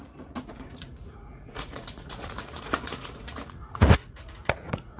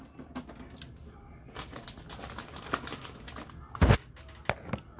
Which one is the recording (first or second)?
second